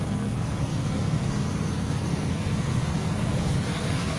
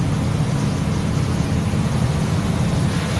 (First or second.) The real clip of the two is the second